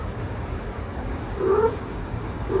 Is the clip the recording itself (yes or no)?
no